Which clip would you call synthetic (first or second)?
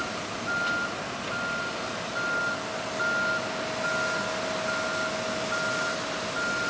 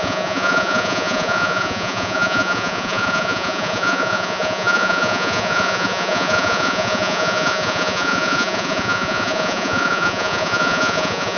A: second